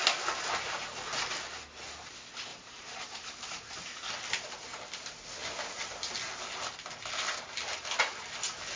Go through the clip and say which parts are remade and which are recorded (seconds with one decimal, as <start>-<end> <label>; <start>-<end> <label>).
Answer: 0.0-2.5 recorded; 2.5-4.1 remade; 4.1-8.8 recorded